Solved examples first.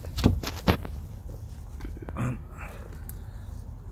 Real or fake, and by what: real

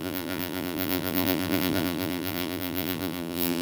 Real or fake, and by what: fake, vocoder, BigVGAN v2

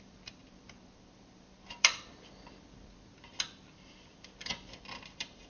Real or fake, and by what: fake, vocoder, BigVGAN v2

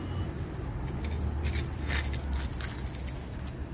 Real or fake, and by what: real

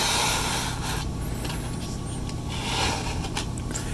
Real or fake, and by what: real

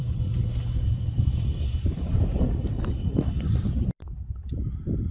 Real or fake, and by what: fake, vocoder, BigVGAN v2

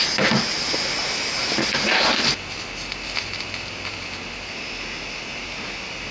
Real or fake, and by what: real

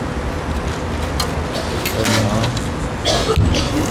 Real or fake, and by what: real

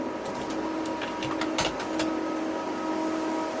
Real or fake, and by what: real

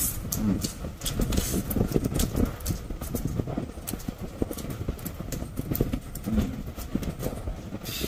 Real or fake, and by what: real